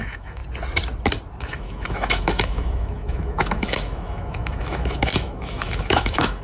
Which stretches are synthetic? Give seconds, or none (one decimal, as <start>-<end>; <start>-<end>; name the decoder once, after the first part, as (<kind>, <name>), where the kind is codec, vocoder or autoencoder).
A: 0.0-0.4 (autoencoder, DAC-VAE); 1.4-6.4